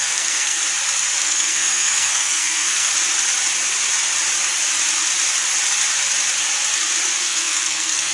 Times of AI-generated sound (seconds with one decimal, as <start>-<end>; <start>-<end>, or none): 0.0-0.6; 1.2-2.9; 7.2-8.1